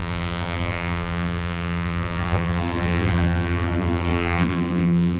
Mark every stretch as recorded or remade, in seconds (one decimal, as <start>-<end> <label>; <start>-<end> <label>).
0.0-5.2 remade